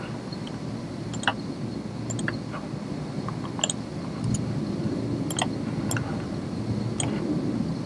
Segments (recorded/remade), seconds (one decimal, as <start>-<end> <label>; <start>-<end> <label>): 0.0-7.9 recorded